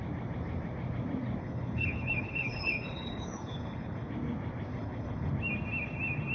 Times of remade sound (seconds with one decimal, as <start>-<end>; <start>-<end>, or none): 1.4-4.1; 4.7-5.3